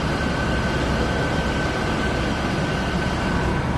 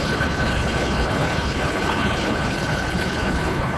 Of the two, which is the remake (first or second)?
second